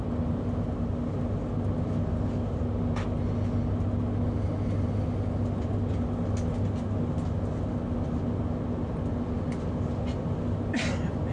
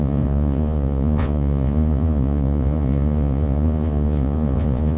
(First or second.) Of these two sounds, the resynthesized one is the second